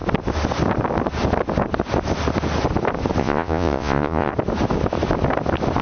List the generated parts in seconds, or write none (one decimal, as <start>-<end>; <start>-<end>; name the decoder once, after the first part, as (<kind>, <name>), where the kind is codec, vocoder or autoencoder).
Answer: 3.2-4.3 (vocoder, Vocos)